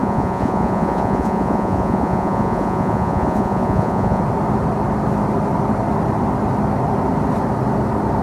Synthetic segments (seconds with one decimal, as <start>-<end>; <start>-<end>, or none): 0.0-4.2